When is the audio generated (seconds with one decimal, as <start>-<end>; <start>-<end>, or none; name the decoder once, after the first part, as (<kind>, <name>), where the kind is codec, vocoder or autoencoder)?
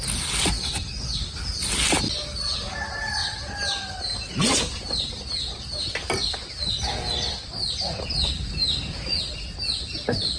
3.2-4.3 (vocoder, BigVGAN v2)